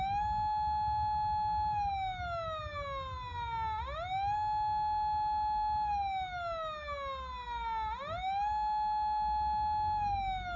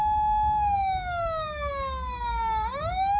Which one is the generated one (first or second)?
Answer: second